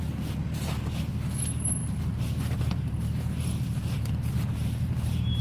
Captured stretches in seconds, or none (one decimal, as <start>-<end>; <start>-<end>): 0.0-1.8; 4.1-4.5